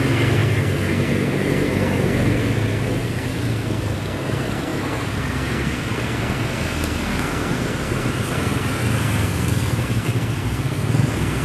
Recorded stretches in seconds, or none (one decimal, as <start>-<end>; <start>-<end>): none